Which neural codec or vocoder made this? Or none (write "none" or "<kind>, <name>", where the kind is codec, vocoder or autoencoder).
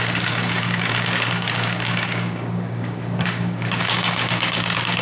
codec, DAC